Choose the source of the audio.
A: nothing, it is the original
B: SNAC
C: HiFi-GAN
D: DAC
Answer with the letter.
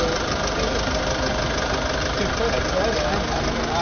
A